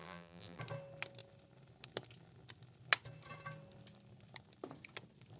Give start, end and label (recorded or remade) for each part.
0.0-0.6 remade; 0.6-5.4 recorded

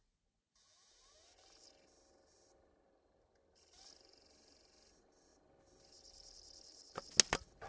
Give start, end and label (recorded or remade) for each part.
0.0-7.7 recorded

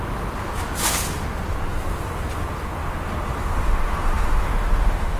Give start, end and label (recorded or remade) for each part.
0.0-3.4 recorded; 3.4-5.2 remade